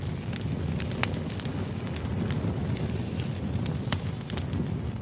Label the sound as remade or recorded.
recorded